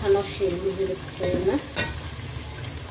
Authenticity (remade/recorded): recorded